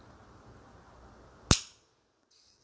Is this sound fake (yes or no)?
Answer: no